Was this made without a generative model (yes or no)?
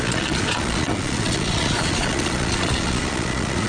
no